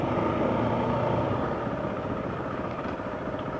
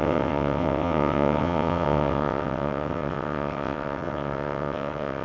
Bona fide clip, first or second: first